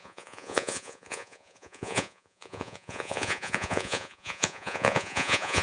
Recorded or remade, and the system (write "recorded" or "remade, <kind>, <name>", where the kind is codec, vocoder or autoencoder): remade, vocoder, Vocos